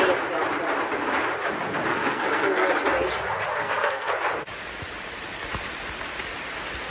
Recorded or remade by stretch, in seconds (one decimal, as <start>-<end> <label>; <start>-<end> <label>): 0.0-1.9 recorded; 1.9-2.7 remade; 2.7-3.5 recorded; 3.5-4.1 remade; 4.1-6.9 recorded